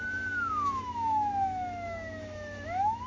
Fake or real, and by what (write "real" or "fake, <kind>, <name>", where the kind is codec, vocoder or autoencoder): fake, autoencoder, DAC-VAE